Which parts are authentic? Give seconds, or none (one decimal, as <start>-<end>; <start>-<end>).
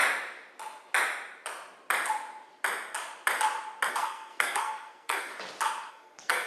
0.0-3.9; 5.3-5.9